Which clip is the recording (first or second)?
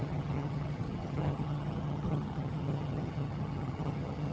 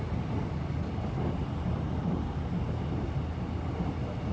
second